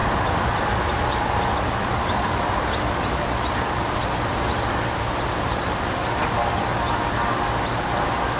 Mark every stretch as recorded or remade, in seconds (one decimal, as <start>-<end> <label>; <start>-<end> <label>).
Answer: 0.0-8.4 recorded